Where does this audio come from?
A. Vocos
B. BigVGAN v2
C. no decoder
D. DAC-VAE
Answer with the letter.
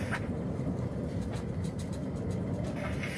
B